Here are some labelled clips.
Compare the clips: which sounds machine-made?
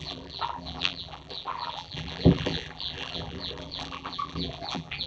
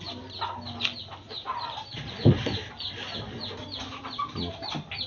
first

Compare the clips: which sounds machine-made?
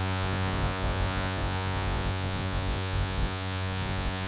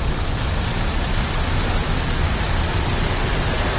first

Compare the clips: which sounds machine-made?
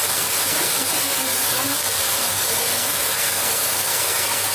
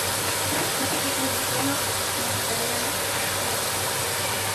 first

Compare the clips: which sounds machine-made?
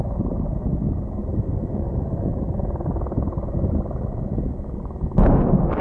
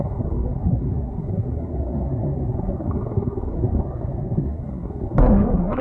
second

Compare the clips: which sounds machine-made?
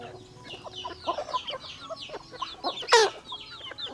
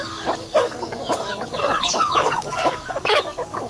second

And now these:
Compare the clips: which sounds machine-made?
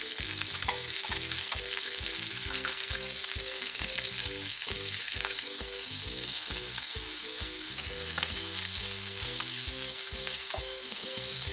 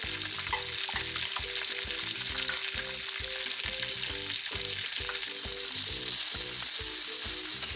first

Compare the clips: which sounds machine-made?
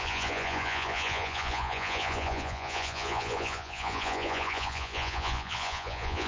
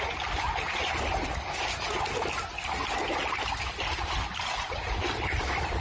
first